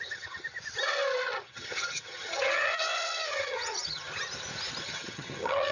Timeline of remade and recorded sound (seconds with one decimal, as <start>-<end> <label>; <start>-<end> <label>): 0.0-0.4 remade; 0.4-1.4 recorded; 1.4-2.7 remade; 2.7-3.3 recorded; 3.3-4.1 remade; 4.1-4.8 recorded; 4.8-5.7 remade